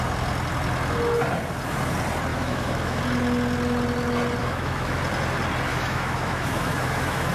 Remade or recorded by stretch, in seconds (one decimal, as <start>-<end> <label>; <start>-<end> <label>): 0.0-2.3 recorded; 2.3-3.0 remade; 3.0-4.4 recorded; 4.4-5.0 remade; 5.0-5.7 recorded; 5.7-7.3 remade